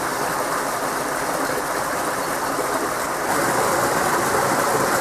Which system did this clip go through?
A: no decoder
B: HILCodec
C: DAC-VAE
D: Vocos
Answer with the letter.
A